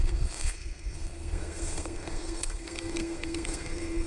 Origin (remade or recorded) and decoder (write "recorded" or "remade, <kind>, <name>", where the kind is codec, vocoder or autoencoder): remade, codec, SNAC